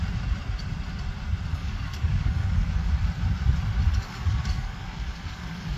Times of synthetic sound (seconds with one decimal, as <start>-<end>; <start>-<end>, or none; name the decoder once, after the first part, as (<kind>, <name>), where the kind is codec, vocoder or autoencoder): 1.5-2.9 (codec, DAC); 3.9-5.8